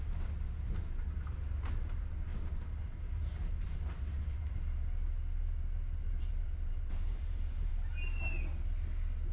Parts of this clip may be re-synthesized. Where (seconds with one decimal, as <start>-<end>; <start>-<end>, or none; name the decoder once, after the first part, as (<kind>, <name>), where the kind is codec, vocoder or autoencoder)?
2.3-4.6 (vocoder, BigVGAN v2); 6.0-7.7